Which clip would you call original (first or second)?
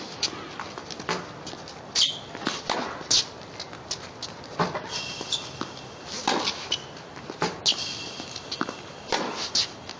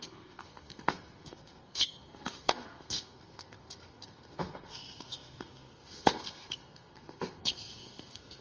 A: first